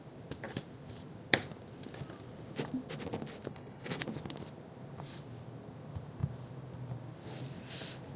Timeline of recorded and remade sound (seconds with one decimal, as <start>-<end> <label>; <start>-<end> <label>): 0.0-3.5 recorded; 3.5-4.0 remade; 4.0-8.2 recorded